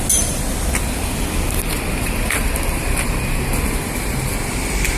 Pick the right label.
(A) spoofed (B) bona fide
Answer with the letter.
B